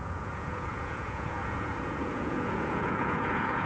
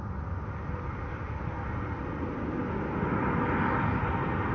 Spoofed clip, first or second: first